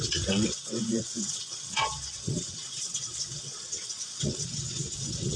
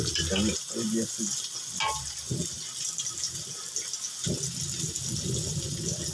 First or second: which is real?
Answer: second